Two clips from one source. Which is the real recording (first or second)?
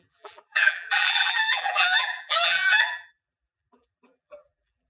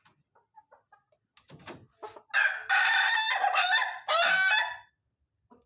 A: second